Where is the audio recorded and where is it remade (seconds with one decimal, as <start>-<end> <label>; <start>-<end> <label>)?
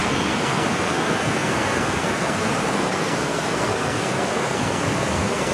0.0-5.5 remade